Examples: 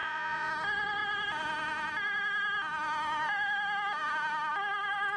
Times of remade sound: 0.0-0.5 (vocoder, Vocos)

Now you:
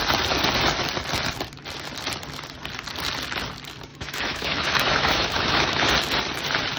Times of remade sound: 3.9-5.9 (autoencoder, DAC-VAE)

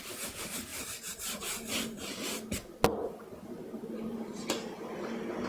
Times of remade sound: 0.7-1.4 (vocoder, BigVGAN v2); 3.6-4.6

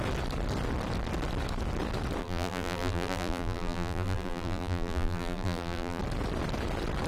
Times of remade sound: 2.2-6.0 (vocoder, BigVGAN v2)

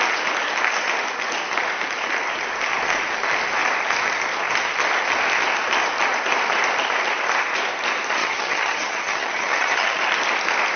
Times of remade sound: 8.2-10.0 (vocoder, HiFi-GAN)

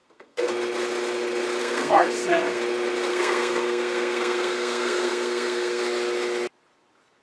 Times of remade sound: 0.0-0.5 (codec, SNAC); 1.6-2.6; 3.1-5.8